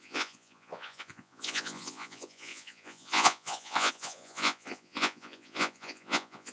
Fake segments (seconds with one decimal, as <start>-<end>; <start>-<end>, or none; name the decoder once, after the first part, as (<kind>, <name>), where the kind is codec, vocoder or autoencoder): 0.0-6.5 (vocoder, Vocos)